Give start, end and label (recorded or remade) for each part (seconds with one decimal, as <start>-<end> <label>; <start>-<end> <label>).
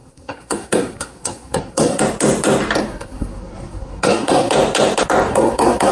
0.0-2.0 remade; 2.0-2.8 recorded; 2.8-4.5 remade; 4.5-5.3 recorded; 5.3-5.9 remade